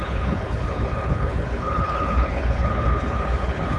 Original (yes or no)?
no